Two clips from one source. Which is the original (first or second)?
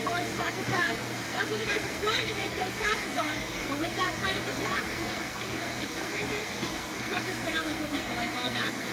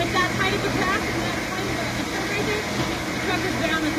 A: second